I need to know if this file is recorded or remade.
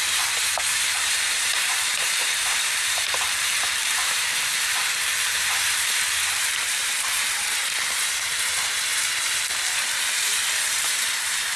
remade